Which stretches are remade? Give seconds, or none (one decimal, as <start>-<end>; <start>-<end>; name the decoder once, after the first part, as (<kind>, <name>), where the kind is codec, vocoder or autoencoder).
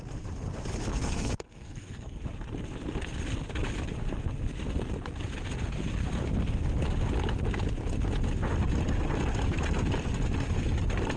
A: 0.9-2.2 (codec, SNAC)